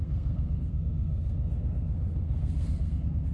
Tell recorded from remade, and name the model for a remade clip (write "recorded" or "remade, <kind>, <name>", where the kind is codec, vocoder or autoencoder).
remade, codec, SNAC